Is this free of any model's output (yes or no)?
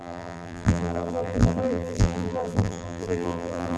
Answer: no